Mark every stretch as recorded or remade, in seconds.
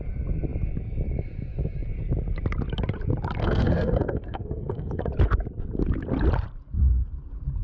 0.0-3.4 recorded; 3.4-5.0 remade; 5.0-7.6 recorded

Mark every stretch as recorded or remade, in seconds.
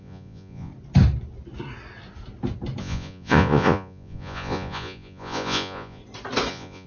0.0-0.7 remade; 0.7-2.8 recorded; 2.8-6.0 remade; 6.0-6.5 recorded; 6.5-6.9 remade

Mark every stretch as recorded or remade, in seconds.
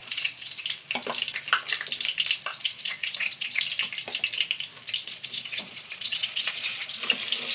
0.0-0.6 remade; 0.6-2.5 recorded; 2.5-3.6 remade; 3.6-5.0 recorded; 5.0-7.0 remade; 7.0-7.5 recorded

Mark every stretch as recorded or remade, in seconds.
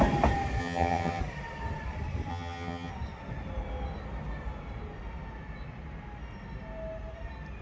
0.0-0.6 recorded; 0.6-1.2 remade; 1.2-2.3 recorded; 2.3-2.9 remade; 2.9-7.6 recorded